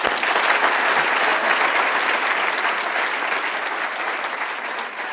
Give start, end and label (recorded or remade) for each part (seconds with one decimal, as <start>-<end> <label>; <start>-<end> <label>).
0.0-5.1 recorded